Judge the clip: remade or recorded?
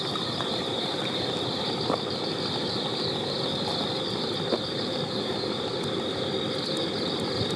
remade